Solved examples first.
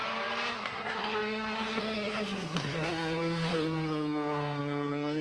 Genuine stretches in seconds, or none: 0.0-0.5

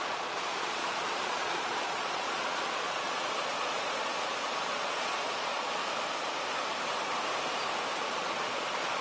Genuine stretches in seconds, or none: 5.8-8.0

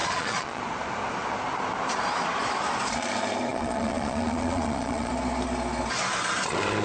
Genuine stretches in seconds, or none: 0.6-3.5; 5.1-6.8

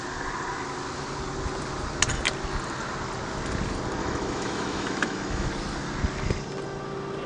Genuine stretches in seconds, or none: 0.0-4.0; 5.5-7.3

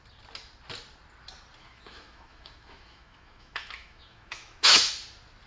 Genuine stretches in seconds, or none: 0.0-1.6; 4.9-5.5